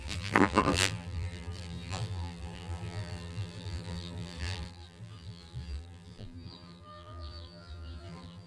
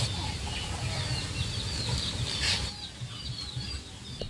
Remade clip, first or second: first